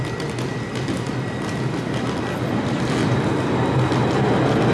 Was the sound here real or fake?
real